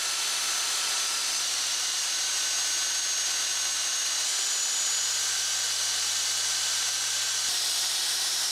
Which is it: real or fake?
real